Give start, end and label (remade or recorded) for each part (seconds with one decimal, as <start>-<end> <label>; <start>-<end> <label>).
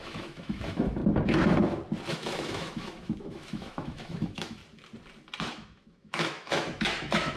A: 0.0-1.0 remade; 1.0-2.1 recorded; 2.1-4.6 remade; 4.6-5.5 recorded; 5.5-7.4 remade